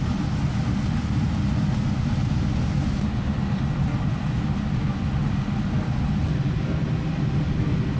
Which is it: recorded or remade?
recorded